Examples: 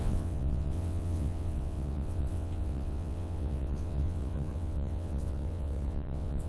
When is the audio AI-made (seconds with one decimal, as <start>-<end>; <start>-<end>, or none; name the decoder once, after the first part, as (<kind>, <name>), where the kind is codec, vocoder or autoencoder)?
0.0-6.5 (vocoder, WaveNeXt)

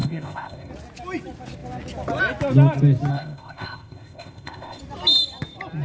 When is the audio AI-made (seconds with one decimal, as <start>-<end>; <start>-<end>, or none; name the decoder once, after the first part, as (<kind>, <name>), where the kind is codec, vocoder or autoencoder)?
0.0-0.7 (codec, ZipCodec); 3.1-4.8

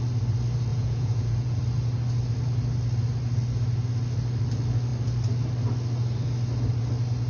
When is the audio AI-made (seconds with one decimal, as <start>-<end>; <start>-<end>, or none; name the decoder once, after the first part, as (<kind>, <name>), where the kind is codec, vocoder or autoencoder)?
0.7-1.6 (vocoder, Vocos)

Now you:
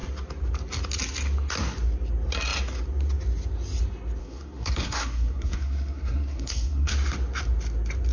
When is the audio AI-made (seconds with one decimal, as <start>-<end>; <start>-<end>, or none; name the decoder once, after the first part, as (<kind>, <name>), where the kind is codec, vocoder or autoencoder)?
4.2-6.9 (codec, SNAC)

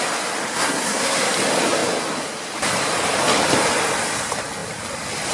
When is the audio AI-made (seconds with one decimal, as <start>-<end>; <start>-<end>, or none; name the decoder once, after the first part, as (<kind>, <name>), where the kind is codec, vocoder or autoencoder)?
0.5-1.3 (codec, SNAC)

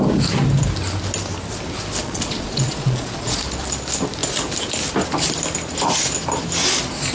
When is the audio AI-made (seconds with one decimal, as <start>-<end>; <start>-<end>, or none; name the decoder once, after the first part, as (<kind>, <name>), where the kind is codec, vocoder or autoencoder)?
2.0-3.4 (vocoder, Vocos)

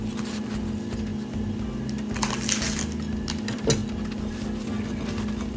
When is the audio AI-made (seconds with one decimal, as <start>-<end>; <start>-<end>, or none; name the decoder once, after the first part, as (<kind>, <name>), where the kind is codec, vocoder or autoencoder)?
none

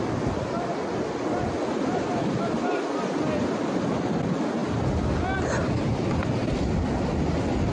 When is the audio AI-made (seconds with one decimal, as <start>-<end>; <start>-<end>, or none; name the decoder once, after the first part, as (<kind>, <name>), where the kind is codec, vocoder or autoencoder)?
none